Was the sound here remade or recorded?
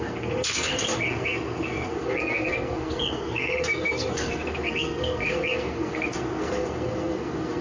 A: remade